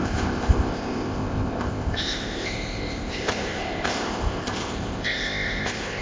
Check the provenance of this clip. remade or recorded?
remade